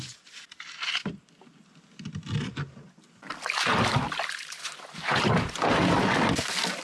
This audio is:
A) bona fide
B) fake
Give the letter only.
A